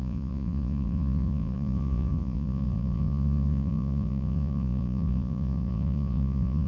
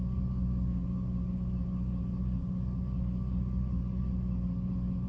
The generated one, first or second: first